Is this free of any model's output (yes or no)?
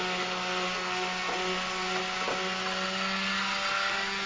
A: yes